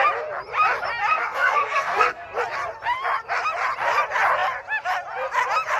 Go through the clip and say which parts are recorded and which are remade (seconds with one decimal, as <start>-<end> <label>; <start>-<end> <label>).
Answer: 0.0-1.1 recorded; 1.1-2.4 remade; 2.4-5.8 recorded